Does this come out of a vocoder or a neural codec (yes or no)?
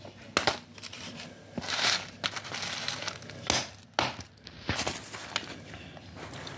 no